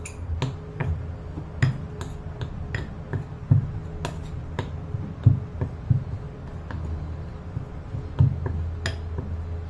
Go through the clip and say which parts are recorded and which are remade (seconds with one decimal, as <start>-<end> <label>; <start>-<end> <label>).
0.0-9.7 recorded